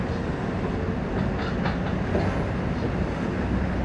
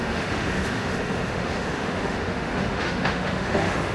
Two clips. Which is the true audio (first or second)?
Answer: first